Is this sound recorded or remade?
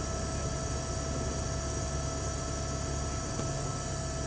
recorded